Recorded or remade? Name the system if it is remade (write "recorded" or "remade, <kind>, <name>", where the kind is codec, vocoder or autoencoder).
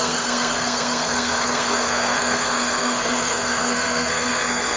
remade, codec, SNAC